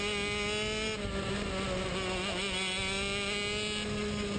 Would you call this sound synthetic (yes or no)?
no